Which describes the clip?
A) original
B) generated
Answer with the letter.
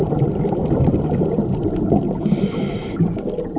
A